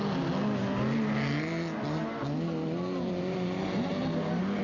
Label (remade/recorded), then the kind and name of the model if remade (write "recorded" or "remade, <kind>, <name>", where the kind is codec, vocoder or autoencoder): recorded